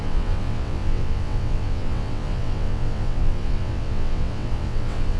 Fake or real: fake